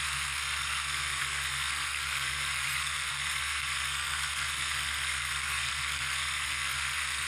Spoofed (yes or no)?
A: yes